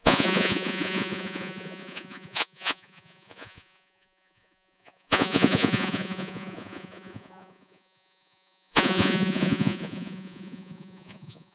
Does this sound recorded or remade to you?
remade